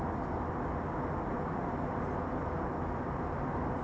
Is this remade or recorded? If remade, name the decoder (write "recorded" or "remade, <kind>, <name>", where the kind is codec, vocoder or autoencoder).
recorded